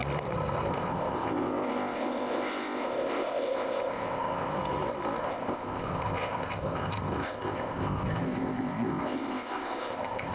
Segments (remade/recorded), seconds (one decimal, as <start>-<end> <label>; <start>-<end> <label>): 0.0-0.7 recorded; 0.7-4.5 remade; 4.5-5.2 recorded; 5.2-10.3 remade